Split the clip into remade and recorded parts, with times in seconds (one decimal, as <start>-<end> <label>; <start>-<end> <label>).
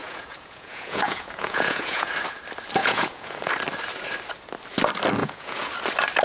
0.0-2.1 remade; 2.1-2.8 recorded; 2.8-3.5 remade; 3.5-5.2 recorded; 5.2-5.7 remade; 5.7-6.2 recorded